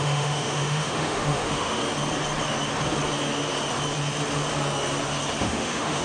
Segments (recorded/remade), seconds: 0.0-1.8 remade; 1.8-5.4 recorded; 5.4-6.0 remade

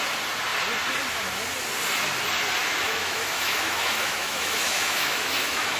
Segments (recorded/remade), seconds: 0.0-2.6 recorded; 2.6-5.8 remade

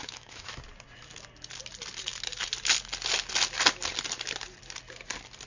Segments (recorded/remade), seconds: 0.0-0.6 remade; 0.6-5.5 recorded

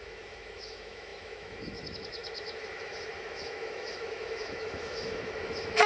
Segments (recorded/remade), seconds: 0.0-5.9 remade

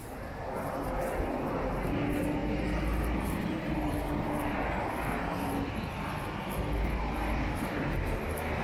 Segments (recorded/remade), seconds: 0.0-8.6 recorded